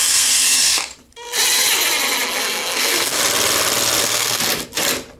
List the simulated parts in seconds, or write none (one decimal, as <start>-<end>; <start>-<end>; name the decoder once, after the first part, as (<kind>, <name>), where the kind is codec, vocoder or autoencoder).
0.0-0.9 (codec, SNAC); 2.4-3.2; 4.0-4.4